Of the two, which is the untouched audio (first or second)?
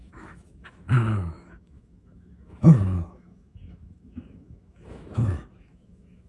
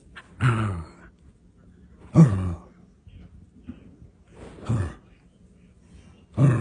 second